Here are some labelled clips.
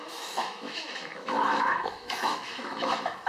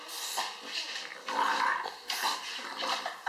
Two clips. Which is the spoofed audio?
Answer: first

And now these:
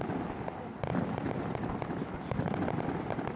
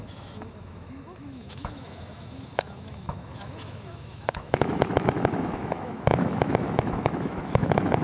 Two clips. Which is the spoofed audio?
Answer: second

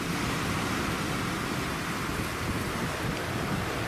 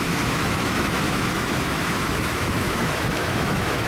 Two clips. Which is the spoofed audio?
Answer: second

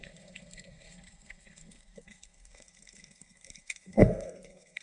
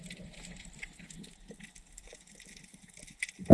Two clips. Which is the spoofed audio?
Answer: first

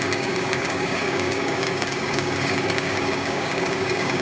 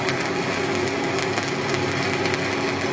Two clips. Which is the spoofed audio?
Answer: first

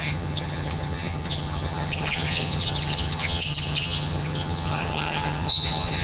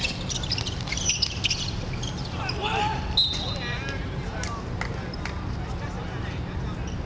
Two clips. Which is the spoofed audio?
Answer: first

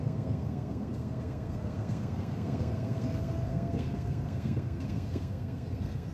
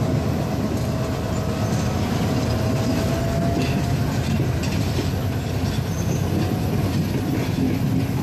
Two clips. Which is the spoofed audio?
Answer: first